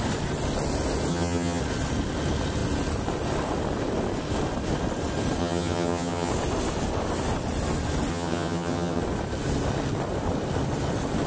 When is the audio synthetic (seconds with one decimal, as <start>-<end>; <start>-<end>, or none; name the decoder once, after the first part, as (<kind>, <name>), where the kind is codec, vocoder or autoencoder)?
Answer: 1.1-1.6 (vocoder, HiFi-GAN); 5.4-6.3; 8.1-9.0